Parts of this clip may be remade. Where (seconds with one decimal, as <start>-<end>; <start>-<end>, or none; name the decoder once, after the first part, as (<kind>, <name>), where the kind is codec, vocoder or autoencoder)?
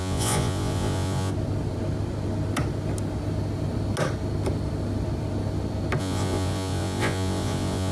0.0-1.3 (vocoder, Vocos); 6.0-7.9